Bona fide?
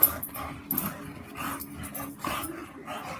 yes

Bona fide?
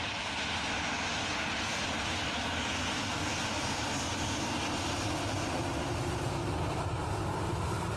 yes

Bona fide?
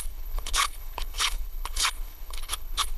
no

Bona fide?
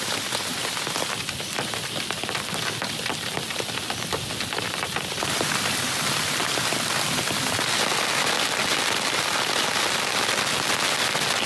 yes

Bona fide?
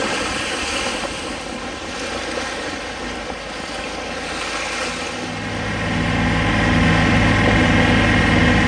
yes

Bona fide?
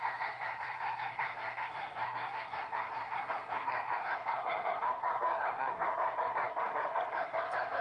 no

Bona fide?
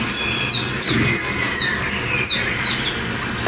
yes